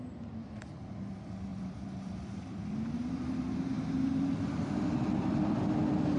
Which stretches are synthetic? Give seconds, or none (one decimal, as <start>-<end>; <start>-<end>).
0.0-4.3; 5.2-6.2